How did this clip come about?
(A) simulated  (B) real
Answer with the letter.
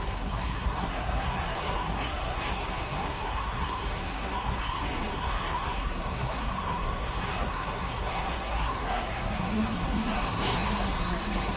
A